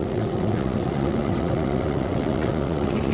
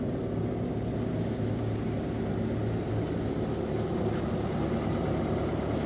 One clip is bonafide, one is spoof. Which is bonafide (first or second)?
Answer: second